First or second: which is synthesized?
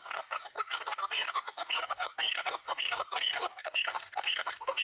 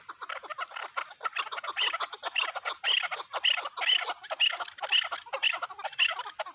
first